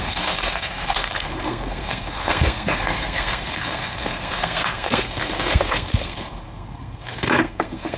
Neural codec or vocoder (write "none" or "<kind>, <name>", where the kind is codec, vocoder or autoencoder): codec, SNAC